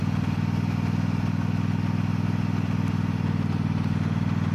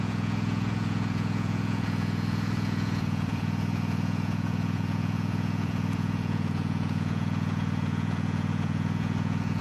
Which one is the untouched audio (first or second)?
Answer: first